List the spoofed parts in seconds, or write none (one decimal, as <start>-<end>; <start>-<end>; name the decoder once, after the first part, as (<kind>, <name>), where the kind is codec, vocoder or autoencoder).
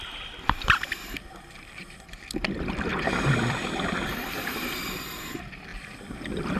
2.9-5.3 (vocoder, BigVGAN v2)